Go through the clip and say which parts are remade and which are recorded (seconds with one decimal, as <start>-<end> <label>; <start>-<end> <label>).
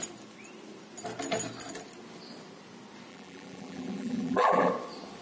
0.0-3.1 recorded; 3.1-4.7 remade; 4.7-5.2 recorded